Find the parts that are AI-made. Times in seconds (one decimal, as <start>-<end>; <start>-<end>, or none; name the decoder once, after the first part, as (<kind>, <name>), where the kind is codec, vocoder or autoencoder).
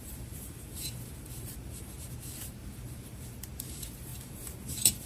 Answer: 0.0-5.1 (vocoder, BigVGAN v2)